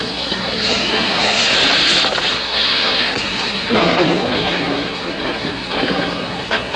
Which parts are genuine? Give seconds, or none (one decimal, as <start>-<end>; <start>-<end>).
1.5-2.3